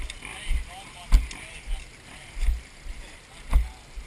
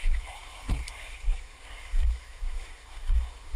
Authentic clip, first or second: first